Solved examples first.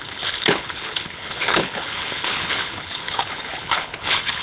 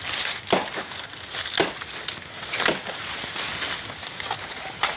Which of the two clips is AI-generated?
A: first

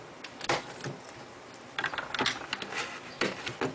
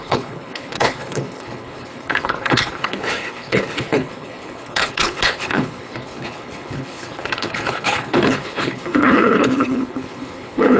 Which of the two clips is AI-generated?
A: second